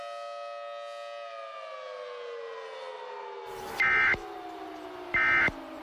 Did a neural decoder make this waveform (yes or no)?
no